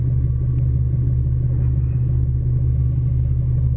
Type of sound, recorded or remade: recorded